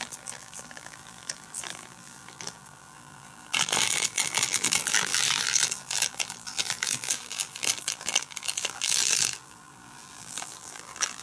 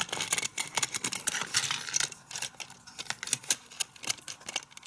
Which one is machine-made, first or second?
first